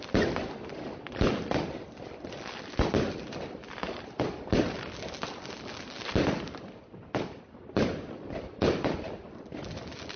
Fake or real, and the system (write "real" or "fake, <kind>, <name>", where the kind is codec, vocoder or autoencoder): real